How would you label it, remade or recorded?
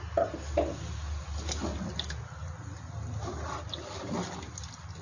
recorded